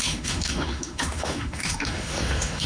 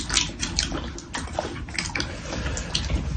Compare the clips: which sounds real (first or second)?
second